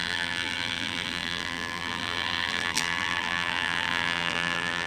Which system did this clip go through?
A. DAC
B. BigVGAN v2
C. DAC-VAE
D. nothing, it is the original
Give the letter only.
B